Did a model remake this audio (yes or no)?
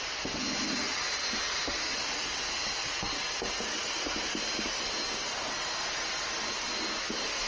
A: no